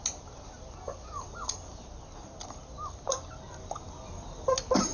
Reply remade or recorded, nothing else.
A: recorded